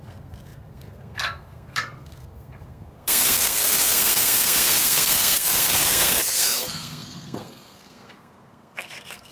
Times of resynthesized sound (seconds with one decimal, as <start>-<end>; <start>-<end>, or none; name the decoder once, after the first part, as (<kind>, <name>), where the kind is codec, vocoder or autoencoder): 0.0-9.3 (codec, SNAC)